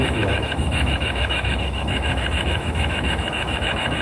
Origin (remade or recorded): remade